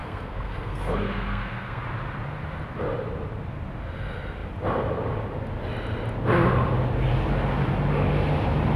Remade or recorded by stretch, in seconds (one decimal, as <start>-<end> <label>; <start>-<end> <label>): 0.0-1.8 remade; 1.8-8.8 recorded